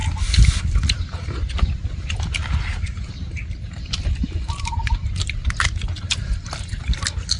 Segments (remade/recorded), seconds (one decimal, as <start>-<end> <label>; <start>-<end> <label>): 0.0-7.4 recorded